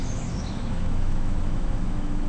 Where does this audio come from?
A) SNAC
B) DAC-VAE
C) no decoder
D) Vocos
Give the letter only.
B